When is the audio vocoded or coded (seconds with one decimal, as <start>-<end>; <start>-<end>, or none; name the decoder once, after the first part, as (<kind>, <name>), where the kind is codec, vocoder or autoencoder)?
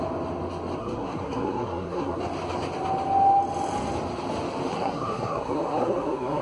0.8-2.2 (codec, SNAC); 4.7-6.4